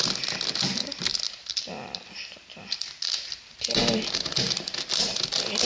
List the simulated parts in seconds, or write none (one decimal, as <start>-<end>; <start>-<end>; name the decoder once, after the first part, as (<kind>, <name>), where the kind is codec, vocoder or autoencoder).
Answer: 1.1-4.4 (vocoder, BigVGAN v2)